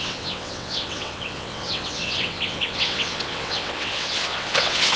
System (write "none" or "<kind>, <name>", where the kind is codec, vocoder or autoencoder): vocoder, WaveNeXt